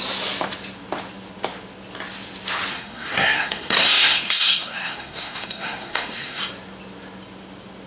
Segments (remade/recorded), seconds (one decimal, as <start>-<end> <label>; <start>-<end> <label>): 0.0-2.7 recorded; 2.7-6.4 remade; 6.4-7.9 recorded